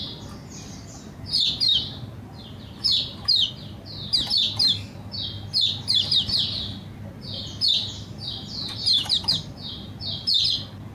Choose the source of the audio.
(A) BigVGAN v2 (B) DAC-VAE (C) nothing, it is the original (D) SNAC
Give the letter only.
C